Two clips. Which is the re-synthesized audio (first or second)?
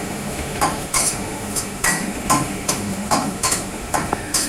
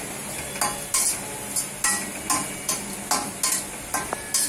first